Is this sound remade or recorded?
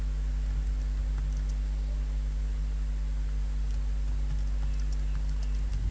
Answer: recorded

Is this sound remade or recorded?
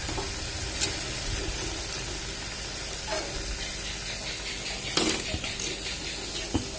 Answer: recorded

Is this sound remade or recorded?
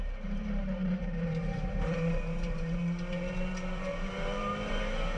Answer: remade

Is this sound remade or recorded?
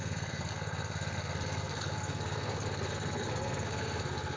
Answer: remade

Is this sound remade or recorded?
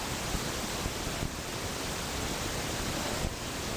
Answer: recorded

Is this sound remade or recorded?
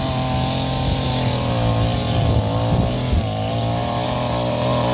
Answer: recorded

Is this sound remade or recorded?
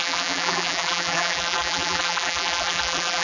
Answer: remade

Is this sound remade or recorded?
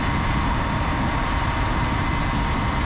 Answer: recorded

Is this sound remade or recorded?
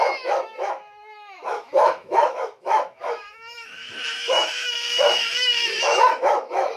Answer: remade